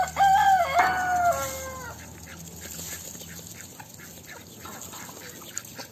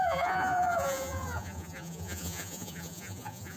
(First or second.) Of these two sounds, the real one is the first